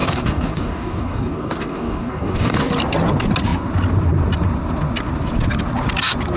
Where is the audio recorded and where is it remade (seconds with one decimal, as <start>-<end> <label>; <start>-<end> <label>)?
0.0-2.7 remade; 2.7-6.4 recorded